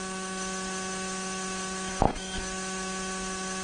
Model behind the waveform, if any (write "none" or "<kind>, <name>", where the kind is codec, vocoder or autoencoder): autoencoder, DAC-VAE